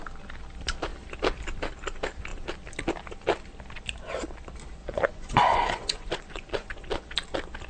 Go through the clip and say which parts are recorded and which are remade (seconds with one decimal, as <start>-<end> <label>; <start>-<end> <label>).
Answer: 0.0-4.8 recorded; 4.8-6.7 remade; 6.7-7.7 recorded